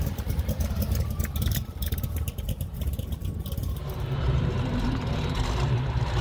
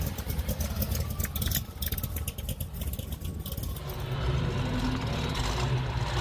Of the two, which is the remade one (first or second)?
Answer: first